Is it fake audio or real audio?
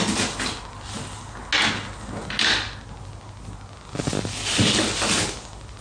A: real